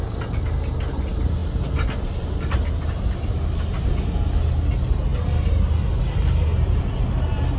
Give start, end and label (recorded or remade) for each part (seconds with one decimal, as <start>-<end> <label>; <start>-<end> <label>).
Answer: 0.0-7.6 recorded